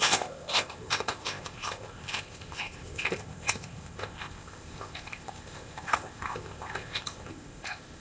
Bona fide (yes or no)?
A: no